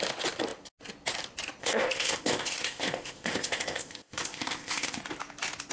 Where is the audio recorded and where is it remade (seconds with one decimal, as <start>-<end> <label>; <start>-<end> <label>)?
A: 0.0-1.6 recorded; 1.6-5.0 remade; 5.0-5.7 recorded